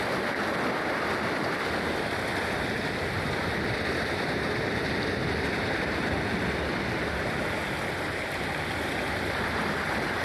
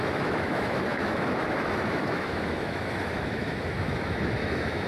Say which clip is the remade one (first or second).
second